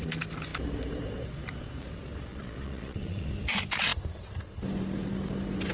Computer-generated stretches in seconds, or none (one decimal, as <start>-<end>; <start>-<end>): 2.3-3.3